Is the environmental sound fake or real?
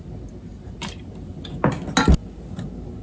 real